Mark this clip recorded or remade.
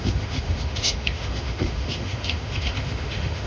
remade